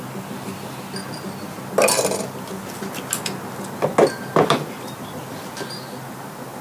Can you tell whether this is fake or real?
real